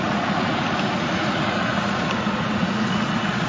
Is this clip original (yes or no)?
no